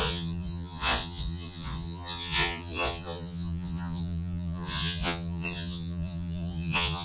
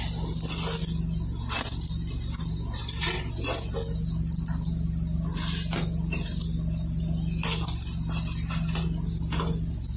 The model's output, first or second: first